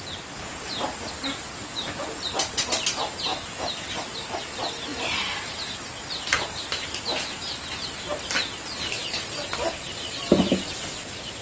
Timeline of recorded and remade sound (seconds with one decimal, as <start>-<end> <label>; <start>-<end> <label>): 0.0-11.4 recorded

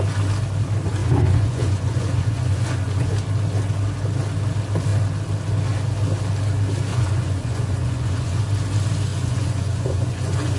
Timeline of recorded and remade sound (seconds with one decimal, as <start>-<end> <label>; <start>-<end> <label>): 0.0-1.0 recorded; 1.0-3.1 remade; 3.1-6.9 recorded; 6.9-8.4 remade; 8.4-9.1 recorded; 9.1-10.6 remade

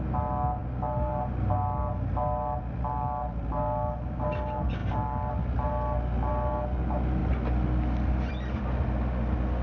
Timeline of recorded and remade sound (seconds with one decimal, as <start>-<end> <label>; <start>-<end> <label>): 0.0-9.6 recorded